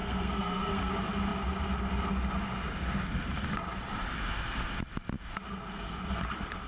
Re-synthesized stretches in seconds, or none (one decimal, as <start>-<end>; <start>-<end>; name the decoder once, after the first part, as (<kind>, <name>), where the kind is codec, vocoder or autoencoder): 0.0-0.9 (codec, SNAC)